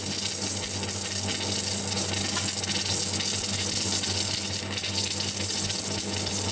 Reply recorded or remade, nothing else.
recorded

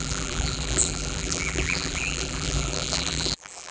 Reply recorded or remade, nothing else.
remade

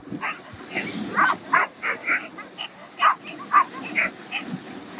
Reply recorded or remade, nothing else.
recorded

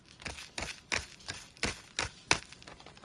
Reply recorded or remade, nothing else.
recorded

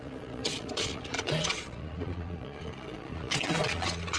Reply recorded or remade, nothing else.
remade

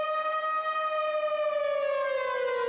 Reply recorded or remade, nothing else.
recorded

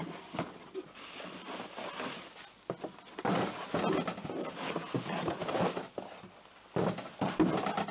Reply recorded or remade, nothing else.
recorded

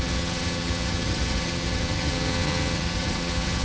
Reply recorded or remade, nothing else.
remade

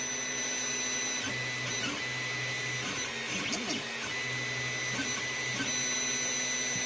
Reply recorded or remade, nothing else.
recorded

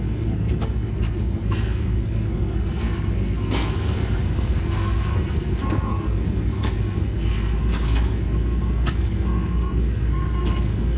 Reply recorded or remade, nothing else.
remade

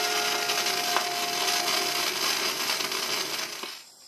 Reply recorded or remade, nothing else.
recorded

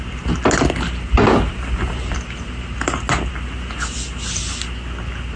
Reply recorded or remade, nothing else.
recorded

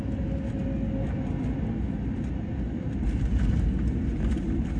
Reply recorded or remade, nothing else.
recorded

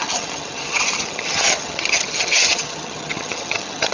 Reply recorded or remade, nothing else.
remade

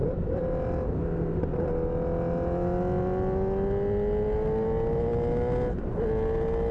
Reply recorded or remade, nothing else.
recorded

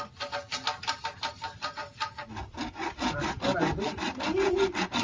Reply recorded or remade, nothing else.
recorded